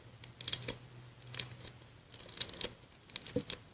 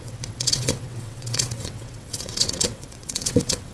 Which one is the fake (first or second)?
second